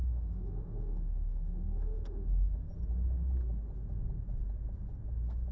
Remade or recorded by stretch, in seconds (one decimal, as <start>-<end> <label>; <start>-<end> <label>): 0.0-2.7 remade; 2.7-5.5 recorded